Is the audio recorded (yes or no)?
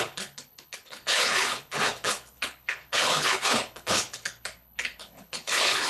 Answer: no